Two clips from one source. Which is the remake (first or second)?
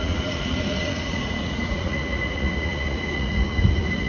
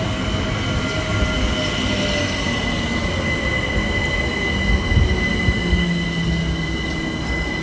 first